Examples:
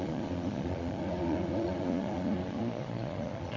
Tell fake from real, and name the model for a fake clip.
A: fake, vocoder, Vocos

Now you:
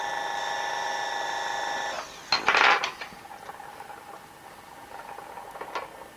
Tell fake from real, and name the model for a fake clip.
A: real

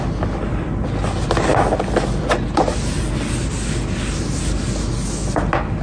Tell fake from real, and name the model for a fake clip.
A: real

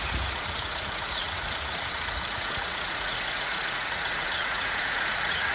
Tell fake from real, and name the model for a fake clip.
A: fake, vocoder, Vocos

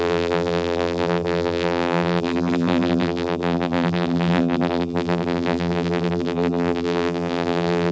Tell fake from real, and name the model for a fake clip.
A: fake, vocoder, BigVGAN v2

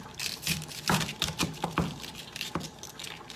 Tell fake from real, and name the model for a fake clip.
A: fake, vocoder, BigVGAN v2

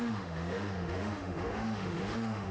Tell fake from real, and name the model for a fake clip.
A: fake, autoencoder, DAC-VAE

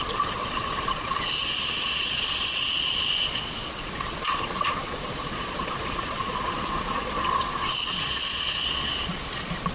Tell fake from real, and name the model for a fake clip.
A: fake, vocoder, Vocos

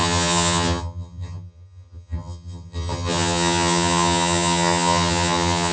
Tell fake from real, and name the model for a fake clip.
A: fake, vocoder, HiFi-GAN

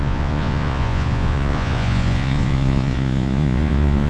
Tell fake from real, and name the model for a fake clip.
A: fake, vocoder, Vocos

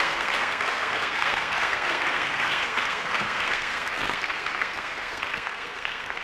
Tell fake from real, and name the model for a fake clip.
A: fake, codec, SNAC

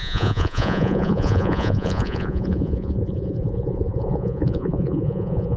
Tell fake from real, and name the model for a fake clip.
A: fake, vocoder, Vocos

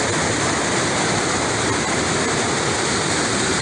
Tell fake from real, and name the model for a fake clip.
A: real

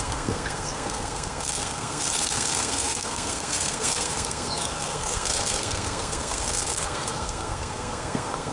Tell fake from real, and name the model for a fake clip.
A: fake, codec, SNAC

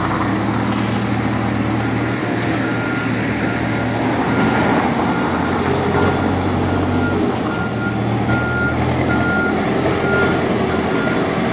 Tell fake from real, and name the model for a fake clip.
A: real